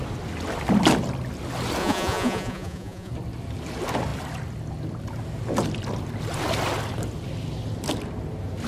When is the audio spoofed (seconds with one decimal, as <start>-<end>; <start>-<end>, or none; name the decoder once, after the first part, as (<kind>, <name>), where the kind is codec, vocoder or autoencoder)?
1.8-3.1 (vocoder, Vocos)